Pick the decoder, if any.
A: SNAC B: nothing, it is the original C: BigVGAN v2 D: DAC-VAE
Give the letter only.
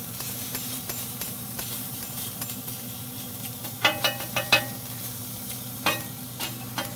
C